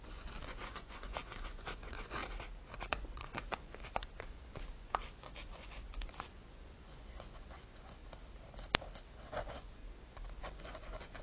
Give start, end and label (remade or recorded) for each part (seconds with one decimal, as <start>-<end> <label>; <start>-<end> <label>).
0.0-2.2 remade; 2.2-2.9 recorded; 2.9-8.0 remade; 8.0-9.3 recorded; 9.3-9.8 remade; 9.8-10.4 recorded; 10.4-11.2 remade

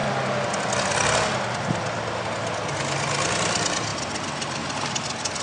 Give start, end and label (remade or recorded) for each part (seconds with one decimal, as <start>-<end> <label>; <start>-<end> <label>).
0.0-5.4 recorded

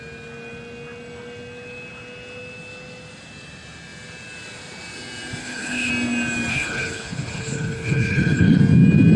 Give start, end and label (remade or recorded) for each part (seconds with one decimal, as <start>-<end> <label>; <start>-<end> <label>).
0.0-5.4 recorded; 5.4-5.9 remade; 5.9-6.5 recorded; 6.5-8.6 remade; 8.6-9.2 recorded

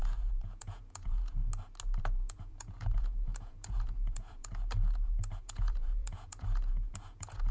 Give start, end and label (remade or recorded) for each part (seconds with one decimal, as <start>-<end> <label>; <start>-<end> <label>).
0.0-1.4 remade; 1.4-2.0 recorded; 2.0-7.5 remade